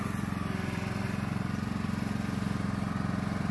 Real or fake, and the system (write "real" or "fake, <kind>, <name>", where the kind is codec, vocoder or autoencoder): real